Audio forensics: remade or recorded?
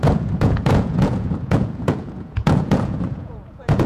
remade